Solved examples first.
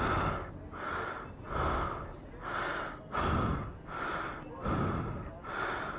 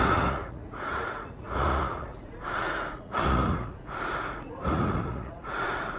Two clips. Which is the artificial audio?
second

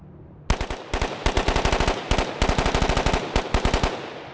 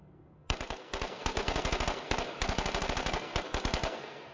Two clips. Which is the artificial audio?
second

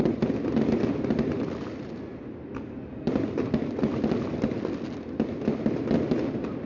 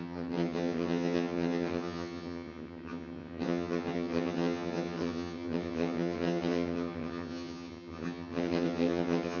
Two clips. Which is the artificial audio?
second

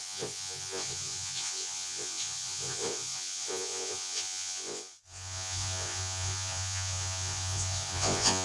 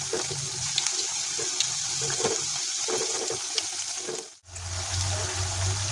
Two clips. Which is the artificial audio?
first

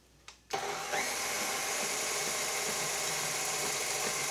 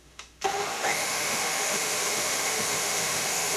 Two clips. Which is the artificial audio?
second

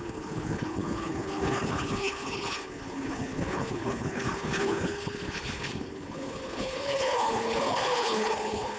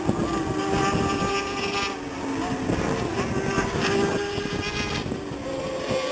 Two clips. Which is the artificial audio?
first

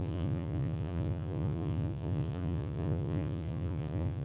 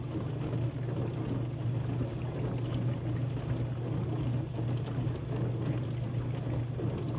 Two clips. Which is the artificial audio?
first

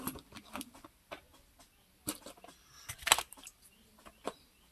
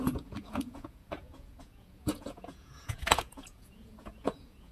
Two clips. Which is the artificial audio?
second